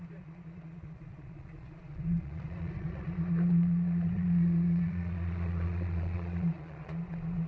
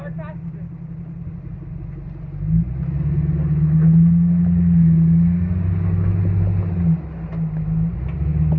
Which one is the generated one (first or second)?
first